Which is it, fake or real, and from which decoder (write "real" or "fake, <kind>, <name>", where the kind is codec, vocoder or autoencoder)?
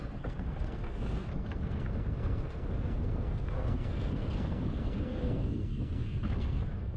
fake, codec, SNAC